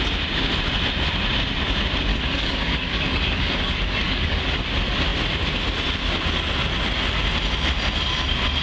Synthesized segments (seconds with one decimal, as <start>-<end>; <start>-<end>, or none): 2.1-4.4